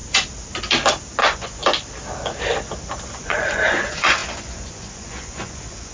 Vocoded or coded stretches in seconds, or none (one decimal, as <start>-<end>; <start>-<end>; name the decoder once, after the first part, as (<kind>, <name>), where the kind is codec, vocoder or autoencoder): 1.2-1.6 (vocoder, Vocos); 3.1-5.9